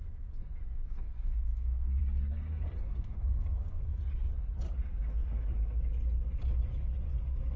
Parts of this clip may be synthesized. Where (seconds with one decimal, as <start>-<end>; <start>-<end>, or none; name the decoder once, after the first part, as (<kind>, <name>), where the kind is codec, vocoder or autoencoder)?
0.9-2.0 (codec, SNAC); 2.8-4.0